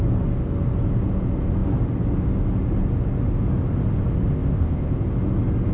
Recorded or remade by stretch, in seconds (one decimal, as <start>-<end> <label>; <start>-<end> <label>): 0.0-4.3 recorded; 4.3-5.0 remade; 5.0-5.7 recorded